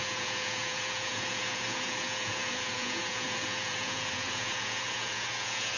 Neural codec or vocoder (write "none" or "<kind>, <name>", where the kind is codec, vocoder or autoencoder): vocoder, Vocos